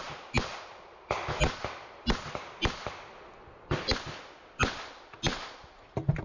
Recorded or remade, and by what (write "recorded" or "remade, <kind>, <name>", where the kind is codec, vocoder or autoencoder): recorded